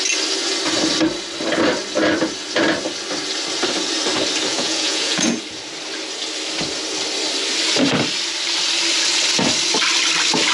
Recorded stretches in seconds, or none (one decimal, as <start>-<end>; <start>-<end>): 0.0-4.5; 5.4-10.5